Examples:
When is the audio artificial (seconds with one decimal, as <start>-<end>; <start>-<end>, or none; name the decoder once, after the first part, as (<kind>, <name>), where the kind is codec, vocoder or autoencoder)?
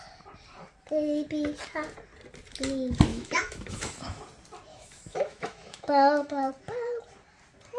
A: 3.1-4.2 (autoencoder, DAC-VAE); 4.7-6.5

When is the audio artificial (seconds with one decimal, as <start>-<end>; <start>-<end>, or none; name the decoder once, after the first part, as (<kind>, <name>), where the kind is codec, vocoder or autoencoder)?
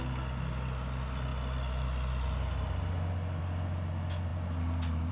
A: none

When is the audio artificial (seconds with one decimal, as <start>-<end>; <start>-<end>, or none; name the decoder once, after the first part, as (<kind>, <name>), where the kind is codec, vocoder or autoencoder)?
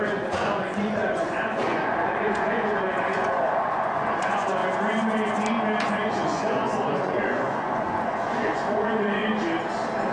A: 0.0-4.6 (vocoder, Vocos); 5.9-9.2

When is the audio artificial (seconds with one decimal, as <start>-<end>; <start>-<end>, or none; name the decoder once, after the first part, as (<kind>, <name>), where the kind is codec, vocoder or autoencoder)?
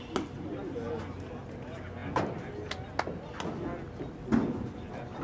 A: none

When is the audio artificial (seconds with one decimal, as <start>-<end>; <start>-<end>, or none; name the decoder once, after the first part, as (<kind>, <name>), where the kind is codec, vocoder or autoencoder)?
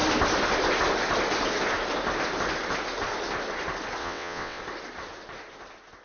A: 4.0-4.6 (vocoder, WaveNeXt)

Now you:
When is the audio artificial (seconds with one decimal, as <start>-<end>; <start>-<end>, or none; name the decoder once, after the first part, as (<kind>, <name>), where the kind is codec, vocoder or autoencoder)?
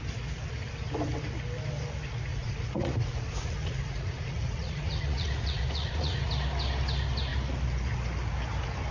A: 2.3-6.3 (vocoder, Vocos)